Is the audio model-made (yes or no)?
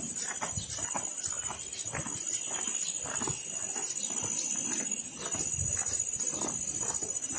no